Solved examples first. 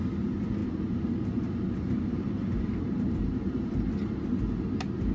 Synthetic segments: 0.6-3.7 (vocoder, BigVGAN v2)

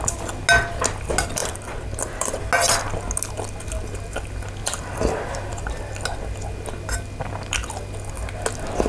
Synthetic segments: 1.4-2.4 (vocoder, BigVGAN v2); 4.6-5.9

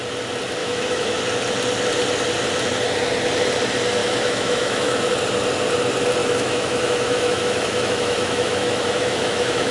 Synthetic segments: 0.6-1.2 (autoencoder, DAC-VAE); 4.0-5.1; 6.2-9.7

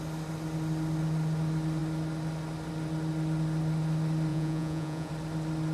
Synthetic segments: 4.3-5.1 (vocoder, Vocos)

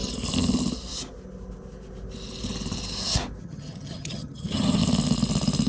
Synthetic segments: 3.4-4.8 (vocoder, HiFi-GAN)

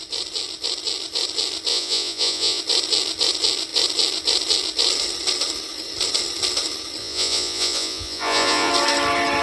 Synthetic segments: 1.7-2.6 (vocoder, Vocos); 7.0-8.7